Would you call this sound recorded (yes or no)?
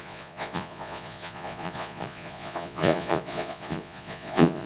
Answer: no